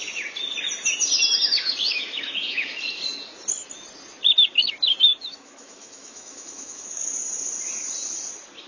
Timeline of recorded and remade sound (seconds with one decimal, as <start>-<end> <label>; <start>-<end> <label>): 0.0-1.9 recorded; 1.9-2.8 remade; 2.8-5.1 recorded; 5.1-7.0 remade; 7.0-8.7 recorded